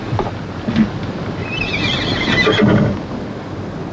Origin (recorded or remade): recorded